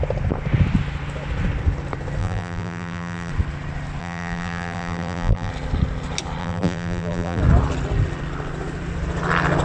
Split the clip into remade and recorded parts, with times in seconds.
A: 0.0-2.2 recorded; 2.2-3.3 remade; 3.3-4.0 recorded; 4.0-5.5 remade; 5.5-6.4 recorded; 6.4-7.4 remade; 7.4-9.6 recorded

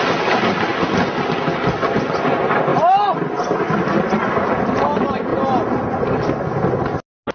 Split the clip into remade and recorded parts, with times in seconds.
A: 0.0-7.3 recorded

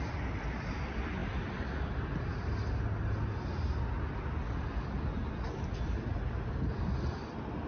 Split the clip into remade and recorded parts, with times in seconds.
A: 0.0-7.7 recorded

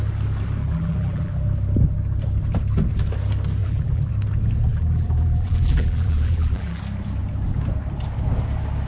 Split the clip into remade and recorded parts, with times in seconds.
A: 0.0-0.6 recorded; 0.6-1.3 remade; 1.3-3.6 recorded; 3.6-4.1 remade; 4.1-4.7 recorded; 4.7-6.8 remade; 6.8-8.9 recorded

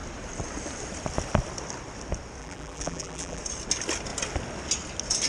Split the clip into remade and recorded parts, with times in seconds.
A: 0.0-2.4 recorded; 2.4-3.4 remade; 3.4-5.3 recorded

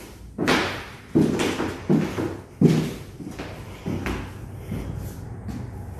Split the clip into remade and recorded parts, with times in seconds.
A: 0.0-6.0 recorded